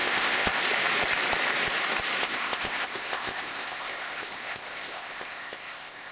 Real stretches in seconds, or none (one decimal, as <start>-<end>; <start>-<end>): 0.6-2.2